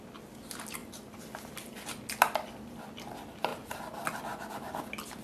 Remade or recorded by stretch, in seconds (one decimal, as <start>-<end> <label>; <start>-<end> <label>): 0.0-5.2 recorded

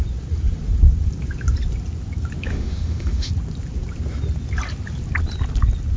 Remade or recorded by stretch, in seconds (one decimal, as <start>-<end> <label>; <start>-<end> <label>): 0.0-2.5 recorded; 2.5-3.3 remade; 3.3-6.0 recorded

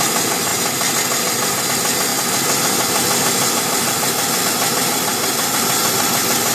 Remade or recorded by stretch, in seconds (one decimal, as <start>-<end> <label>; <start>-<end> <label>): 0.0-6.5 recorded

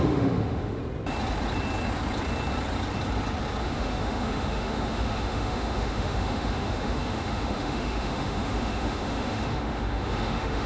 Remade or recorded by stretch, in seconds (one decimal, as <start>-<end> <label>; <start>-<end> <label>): 0.0-0.8 remade; 0.8-3.6 recorded; 3.6-10.7 remade

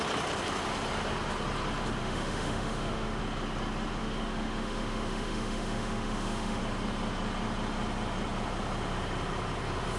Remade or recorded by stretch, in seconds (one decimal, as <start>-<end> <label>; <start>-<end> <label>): 0.0-2.0 recorded; 2.0-3.2 remade; 3.2-4.0 recorded; 4.0-6.6 remade; 6.6-10.0 recorded

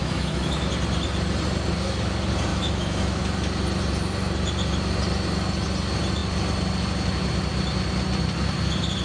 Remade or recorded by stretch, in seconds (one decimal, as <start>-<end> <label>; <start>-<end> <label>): 0.0-0.5 remade; 0.5-2.5 recorded; 2.5-3.2 remade; 3.2-9.0 recorded